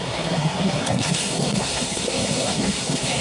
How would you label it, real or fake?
fake